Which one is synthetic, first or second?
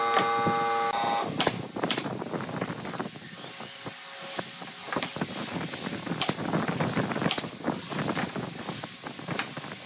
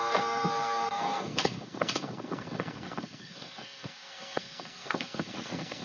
second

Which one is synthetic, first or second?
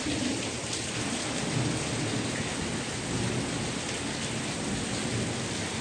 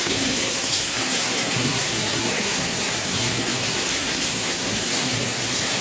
second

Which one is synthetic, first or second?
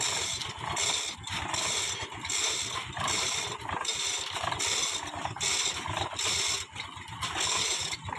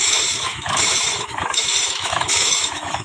second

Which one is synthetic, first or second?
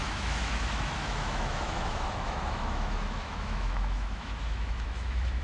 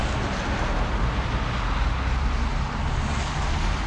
first